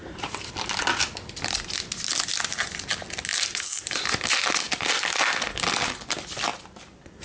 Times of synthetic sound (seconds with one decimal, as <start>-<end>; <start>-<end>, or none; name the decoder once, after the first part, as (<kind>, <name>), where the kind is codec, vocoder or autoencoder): 0.0-0.5 (vocoder, BigVGAN v2); 3.3-4.2